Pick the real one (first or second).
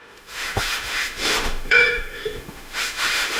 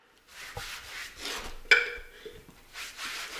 second